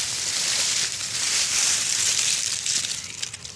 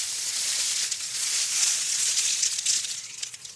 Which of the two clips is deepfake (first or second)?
second